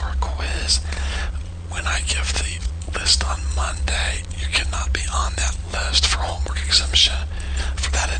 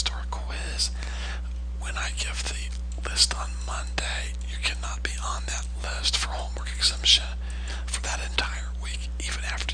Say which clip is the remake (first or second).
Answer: first